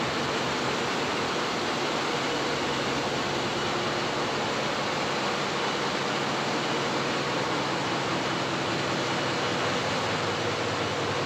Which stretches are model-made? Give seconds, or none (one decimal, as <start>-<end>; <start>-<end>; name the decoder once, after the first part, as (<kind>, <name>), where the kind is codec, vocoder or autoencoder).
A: none